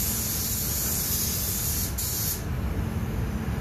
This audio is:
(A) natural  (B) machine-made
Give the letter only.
A